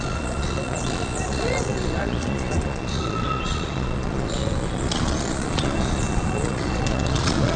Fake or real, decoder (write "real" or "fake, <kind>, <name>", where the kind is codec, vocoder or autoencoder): fake, vocoder, Vocos